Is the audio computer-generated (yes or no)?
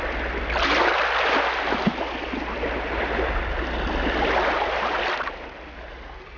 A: no